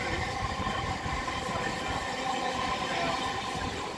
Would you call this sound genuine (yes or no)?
yes